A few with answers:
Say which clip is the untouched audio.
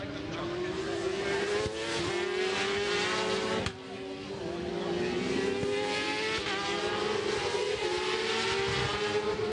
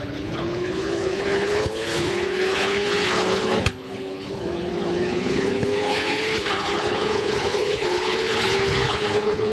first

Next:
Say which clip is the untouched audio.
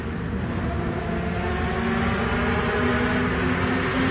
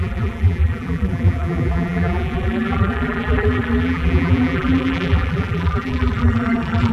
first